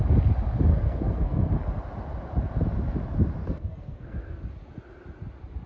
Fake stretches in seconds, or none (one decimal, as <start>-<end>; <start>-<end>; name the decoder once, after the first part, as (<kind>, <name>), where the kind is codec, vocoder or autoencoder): 0.7-1.5 (codec, SNAC); 3.4-4.5